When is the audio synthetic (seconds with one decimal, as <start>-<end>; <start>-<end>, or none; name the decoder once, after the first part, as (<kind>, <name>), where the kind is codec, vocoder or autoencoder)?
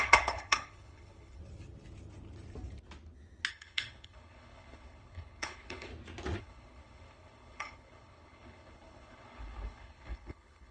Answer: 0.0-1.4 (codec, HILCodec); 3.5-5.9; 6.4-10.7